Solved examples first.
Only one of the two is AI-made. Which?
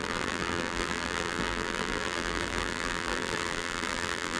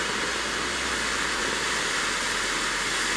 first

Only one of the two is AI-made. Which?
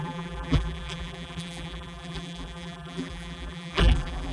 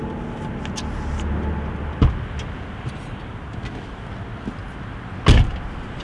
first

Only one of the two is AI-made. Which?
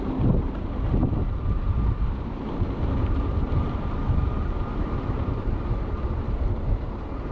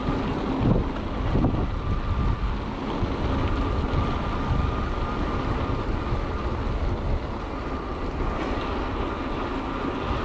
first